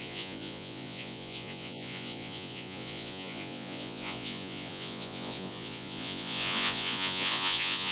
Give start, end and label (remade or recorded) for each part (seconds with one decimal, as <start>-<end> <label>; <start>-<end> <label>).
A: 0.0-7.9 remade